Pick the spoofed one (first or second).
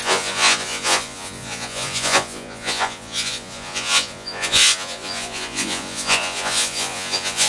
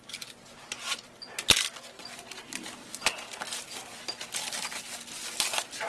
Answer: first